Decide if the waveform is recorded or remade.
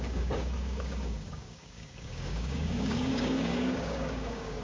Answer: remade